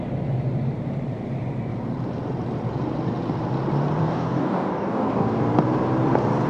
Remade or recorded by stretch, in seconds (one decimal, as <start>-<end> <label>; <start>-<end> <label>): 0.0-4.0 recorded; 4.0-5.4 remade; 5.4-6.5 recorded